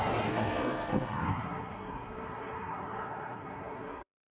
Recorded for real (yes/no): no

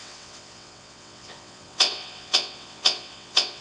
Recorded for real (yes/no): no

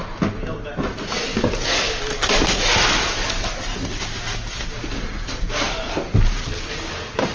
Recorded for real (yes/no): yes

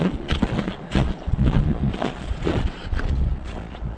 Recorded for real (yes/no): no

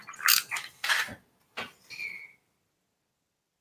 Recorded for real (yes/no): yes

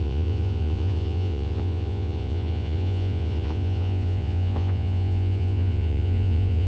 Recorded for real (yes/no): no